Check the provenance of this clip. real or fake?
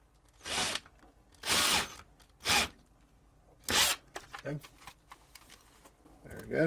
real